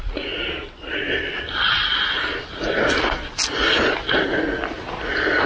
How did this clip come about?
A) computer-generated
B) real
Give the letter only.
B